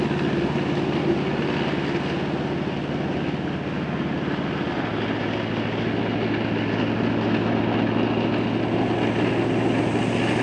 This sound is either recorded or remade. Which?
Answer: recorded